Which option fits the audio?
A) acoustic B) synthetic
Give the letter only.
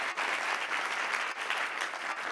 A